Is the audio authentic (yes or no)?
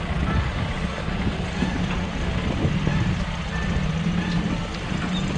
yes